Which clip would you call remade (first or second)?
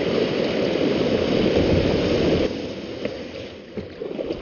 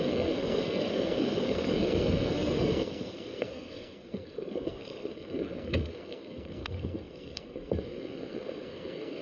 second